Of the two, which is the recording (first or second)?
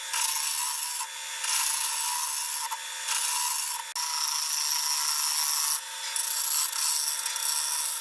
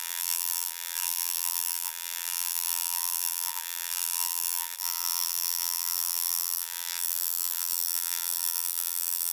first